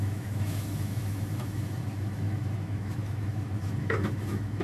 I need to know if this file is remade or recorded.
remade